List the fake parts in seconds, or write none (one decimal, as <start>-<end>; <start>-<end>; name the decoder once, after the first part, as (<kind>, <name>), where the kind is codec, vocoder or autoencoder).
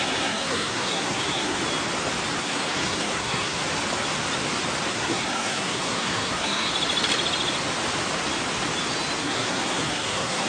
0.0-1.6 (codec, SNAC); 2.4-3.6; 4.9-6.7; 9.2-10.5